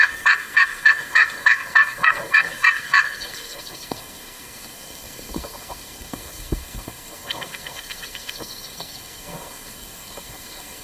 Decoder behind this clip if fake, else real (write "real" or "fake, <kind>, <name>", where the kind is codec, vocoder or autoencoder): fake, codec, SNAC